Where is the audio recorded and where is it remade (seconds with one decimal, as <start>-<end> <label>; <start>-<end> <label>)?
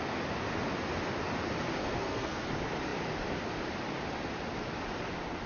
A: 0.0-1.8 recorded; 1.8-2.5 remade; 2.5-5.5 recorded